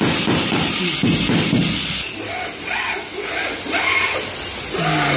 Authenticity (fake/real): real